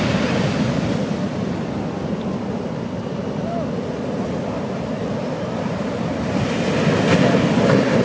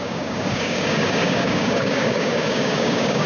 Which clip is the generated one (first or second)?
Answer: second